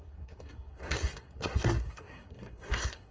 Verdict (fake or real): fake